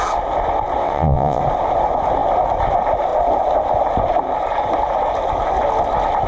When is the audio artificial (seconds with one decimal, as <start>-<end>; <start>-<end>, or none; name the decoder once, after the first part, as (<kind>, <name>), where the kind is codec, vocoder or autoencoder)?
0.8-1.4 (vocoder, WaveNeXt)